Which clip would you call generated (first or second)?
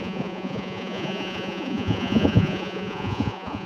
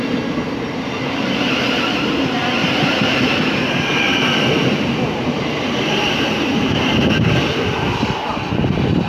first